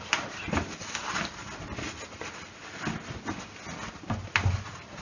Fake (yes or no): no